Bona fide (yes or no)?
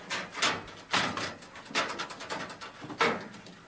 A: yes